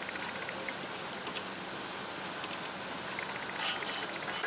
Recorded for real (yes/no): yes